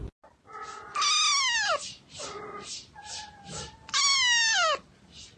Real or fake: real